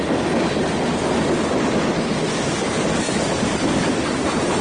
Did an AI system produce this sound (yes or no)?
no